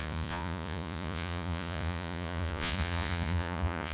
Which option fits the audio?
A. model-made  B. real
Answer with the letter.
A